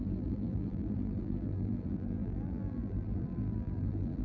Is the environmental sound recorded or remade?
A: remade